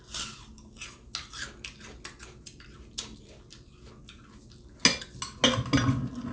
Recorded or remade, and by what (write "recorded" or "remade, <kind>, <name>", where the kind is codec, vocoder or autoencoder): recorded